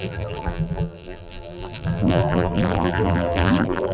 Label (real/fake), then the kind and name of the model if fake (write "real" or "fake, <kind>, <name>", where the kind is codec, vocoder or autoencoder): fake, vocoder, BigVGAN v2